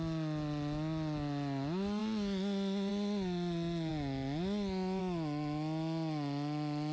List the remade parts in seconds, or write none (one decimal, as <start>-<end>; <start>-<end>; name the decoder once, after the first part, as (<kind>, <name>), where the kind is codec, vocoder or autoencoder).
none